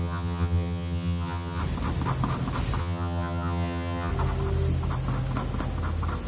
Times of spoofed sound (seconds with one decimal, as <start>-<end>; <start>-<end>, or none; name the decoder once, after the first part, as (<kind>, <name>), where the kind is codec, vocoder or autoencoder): 0.0-1.6 (vocoder, HiFi-GAN); 2.8-4.1